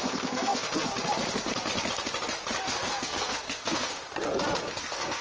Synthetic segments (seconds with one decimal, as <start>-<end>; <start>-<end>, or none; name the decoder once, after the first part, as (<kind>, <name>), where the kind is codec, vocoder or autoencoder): 0.0-0.9 (codec, SNAC); 2.6-3.9; 4.6-5.2